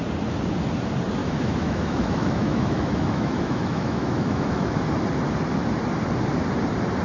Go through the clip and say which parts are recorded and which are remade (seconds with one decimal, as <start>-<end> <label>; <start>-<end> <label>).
0.0-1.2 recorded; 1.2-4.8 remade; 4.8-7.0 recorded